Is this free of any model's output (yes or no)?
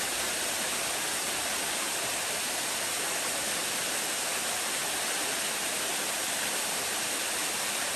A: yes